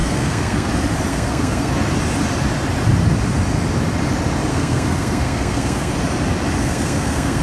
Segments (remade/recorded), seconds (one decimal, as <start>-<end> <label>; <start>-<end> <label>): 0.0-0.7 remade; 0.7-1.1 recorded; 1.1-1.7 remade; 1.7-4.5 recorded; 4.5-5.9 remade; 5.9-6.6 recorded; 6.6-7.4 remade